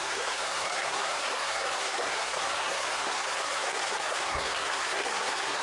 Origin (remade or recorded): remade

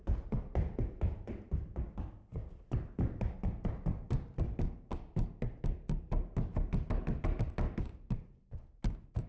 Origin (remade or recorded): recorded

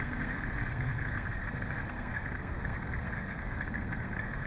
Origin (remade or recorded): remade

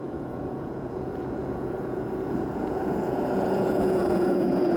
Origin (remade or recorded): remade